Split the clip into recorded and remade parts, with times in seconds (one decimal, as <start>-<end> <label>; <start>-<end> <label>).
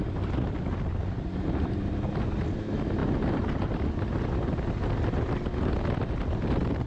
0.0-6.9 recorded